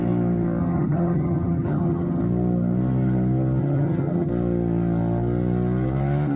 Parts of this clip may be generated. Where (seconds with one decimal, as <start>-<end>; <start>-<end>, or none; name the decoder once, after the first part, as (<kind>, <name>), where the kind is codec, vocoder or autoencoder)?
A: 0.6-2.2 (vocoder, HiFi-GAN); 3.6-4.3